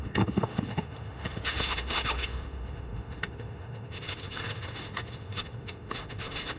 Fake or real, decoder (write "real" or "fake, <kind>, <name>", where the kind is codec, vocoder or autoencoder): fake, autoencoder, DAC-VAE